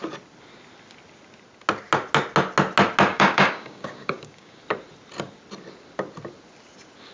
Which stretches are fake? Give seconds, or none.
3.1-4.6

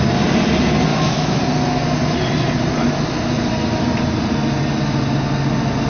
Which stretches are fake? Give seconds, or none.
0.9-1.4

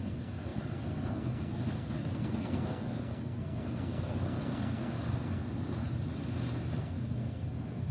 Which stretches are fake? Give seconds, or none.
0.0-5.8; 6.8-7.9

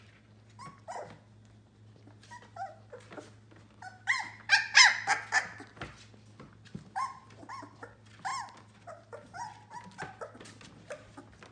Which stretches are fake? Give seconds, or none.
none

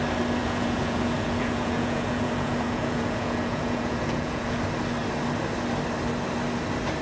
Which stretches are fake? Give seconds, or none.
0.4-4.6

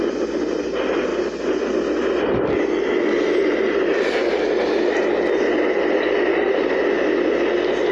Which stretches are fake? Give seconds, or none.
none

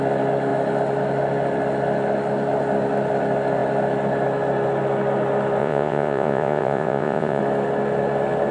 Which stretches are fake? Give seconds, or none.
5.6-7.4

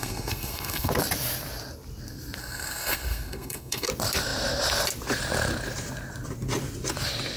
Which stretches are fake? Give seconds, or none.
0.0-0.9; 2.4-3.9